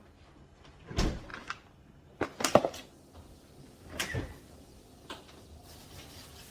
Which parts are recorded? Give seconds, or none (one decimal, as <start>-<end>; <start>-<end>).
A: 0.0-6.5

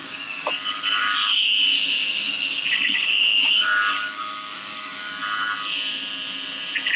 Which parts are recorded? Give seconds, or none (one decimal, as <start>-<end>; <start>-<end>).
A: 0.5-1.0; 5.2-7.0